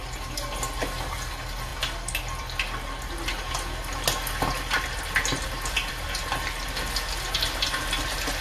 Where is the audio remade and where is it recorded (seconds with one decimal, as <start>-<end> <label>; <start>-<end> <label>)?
0.0-8.4 recorded